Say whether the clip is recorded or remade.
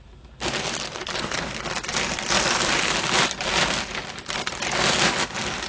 recorded